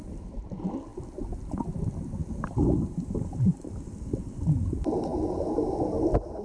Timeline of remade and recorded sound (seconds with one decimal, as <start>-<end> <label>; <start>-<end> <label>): 0.0-6.4 recorded